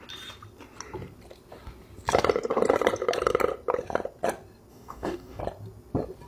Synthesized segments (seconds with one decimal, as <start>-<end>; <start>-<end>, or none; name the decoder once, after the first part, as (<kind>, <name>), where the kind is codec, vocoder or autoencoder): 4.7-5.4 (codec, DAC)